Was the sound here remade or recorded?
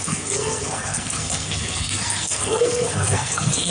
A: remade